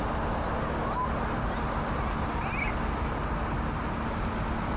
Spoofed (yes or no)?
no